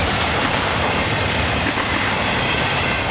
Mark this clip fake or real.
fake